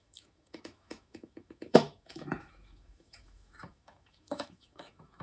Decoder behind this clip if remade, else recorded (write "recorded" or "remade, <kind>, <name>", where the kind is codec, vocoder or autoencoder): remade, autoencoder, DAC-VAE